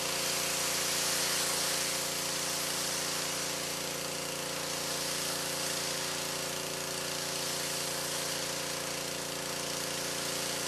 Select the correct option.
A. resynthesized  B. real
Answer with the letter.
B